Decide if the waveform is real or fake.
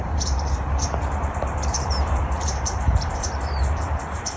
fake